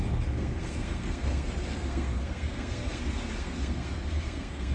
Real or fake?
fake